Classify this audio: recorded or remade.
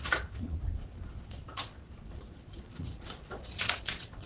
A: remade